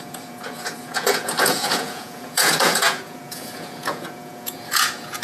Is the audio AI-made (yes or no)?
yes